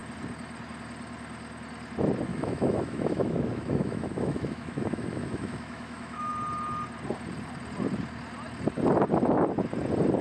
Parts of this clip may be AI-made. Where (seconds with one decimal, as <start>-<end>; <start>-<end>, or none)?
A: 2.3-6.3